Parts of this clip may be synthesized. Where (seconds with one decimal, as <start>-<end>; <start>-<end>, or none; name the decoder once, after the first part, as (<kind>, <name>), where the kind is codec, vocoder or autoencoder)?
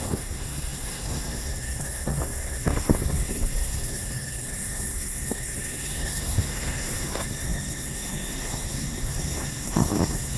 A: 0.0-10.4 (codec, SNAC)